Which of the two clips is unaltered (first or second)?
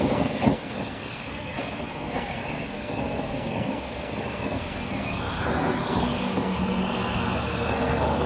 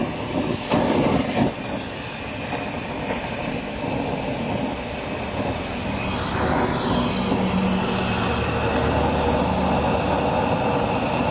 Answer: second